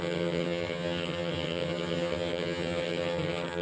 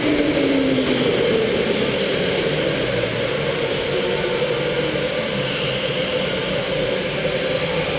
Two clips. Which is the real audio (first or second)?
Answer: second